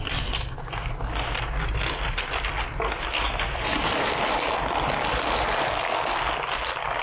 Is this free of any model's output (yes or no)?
yes